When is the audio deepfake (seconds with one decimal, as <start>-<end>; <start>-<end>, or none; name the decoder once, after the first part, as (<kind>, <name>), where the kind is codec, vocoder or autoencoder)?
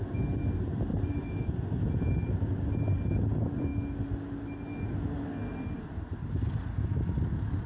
0.9-2.0 (vocoder, BigVGAN v2)